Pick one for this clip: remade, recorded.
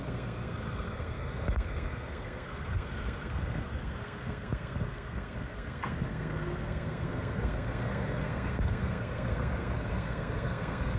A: remade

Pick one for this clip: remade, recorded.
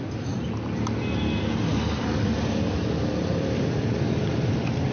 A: recorded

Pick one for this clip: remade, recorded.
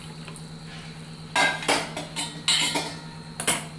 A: recorded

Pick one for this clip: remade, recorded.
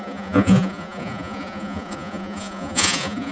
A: remade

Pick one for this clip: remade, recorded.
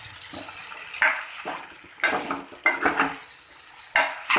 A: recorded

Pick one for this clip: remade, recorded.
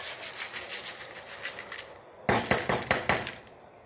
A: recorded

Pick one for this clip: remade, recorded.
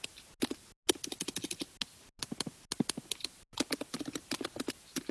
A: recorded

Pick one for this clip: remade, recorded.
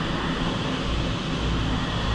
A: recorded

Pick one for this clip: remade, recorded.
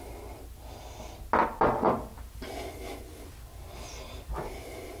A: recorded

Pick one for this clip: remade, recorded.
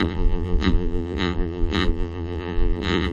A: remade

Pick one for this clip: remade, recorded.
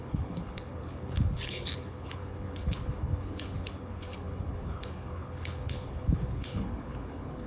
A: remade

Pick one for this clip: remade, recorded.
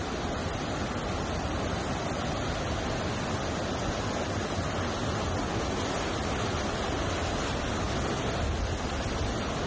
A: recorded